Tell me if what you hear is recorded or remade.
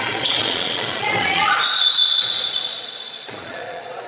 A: remade